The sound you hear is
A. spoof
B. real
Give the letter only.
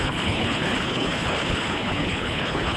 A